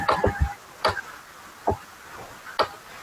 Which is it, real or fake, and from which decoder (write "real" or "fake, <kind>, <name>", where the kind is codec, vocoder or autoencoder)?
real